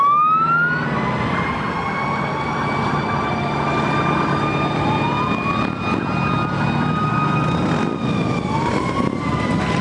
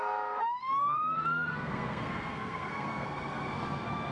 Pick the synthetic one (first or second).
second